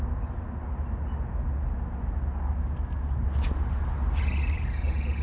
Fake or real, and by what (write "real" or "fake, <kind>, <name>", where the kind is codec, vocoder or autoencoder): real